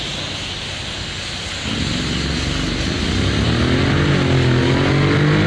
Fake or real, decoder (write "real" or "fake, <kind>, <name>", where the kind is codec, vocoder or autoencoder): real